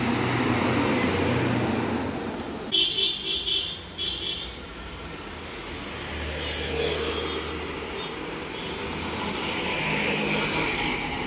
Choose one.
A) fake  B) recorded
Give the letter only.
B